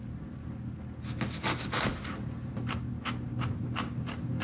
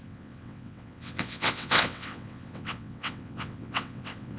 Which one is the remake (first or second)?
second